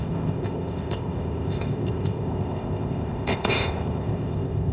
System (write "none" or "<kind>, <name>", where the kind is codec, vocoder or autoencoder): codec, ZipCodec